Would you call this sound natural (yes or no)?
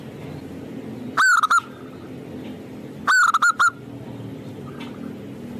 yes